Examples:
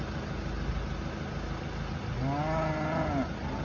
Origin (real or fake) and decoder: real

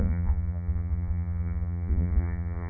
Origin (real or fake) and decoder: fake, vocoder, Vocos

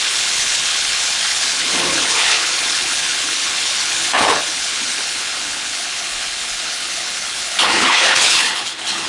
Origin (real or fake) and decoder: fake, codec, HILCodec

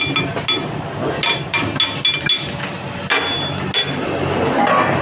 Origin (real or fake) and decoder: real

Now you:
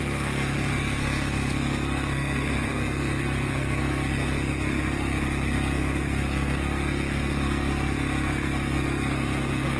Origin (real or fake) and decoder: fake, codec, SNAC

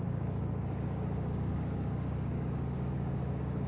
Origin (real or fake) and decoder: fake, codec, DAC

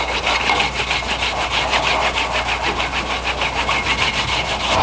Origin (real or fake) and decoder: real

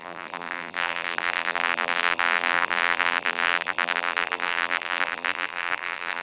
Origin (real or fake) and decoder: fake, vocoder, BigVGAN v2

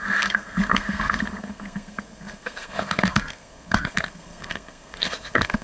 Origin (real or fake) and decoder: fake, codec, SNAC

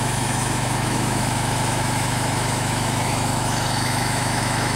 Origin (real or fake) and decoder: fake, autoencoder, DAC-VAE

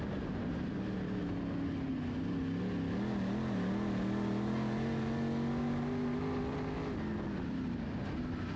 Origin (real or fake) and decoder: real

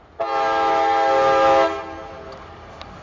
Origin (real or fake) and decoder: real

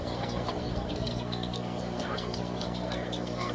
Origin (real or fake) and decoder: fake, codec, SNAC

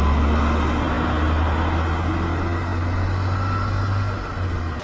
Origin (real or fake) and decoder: real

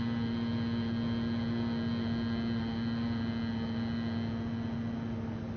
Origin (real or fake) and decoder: real